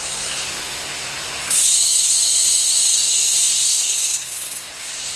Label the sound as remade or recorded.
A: remade